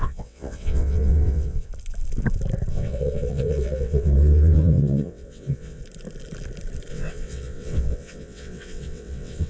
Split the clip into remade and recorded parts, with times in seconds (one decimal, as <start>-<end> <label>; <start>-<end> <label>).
0.0-1.7 remade; 1.7-2.7 recorded; 2.7-5.8 remade; 5.8-6.9 recorded; 6.9-9.5 remade